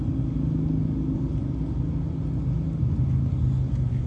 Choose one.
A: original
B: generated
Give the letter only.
A